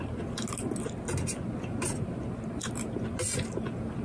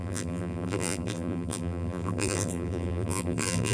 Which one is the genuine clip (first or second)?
first